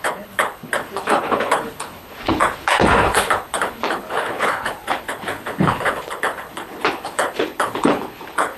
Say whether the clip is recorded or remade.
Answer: remade